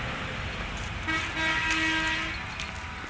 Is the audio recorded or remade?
recorded